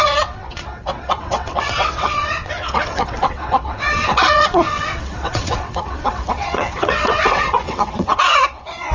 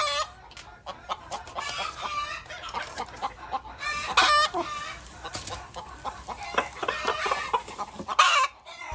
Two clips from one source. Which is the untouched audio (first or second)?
second